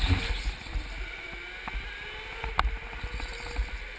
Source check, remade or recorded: recorded